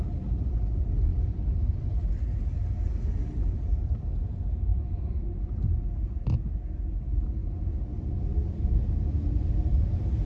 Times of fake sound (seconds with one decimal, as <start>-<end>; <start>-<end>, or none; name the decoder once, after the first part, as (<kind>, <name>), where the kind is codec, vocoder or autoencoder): 4.7-5.6 (vocoder, BigVGAN v2)